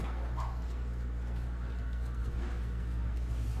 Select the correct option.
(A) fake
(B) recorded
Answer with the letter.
A